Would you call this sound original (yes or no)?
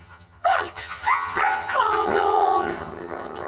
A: no